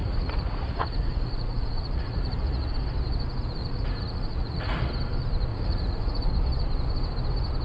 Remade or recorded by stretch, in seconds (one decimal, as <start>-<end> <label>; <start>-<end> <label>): 0.0-2.7 remade; 2.7-3.6 recorded; 3.6-4.9 remade; 4.9-5.5 recorded; 5.5-6.3 remade; 6.3-7.6 recorded